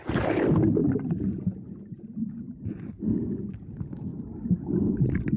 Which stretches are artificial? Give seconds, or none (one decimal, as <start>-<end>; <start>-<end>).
0.8-2.0